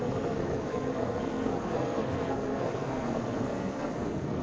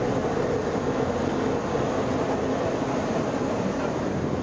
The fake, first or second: first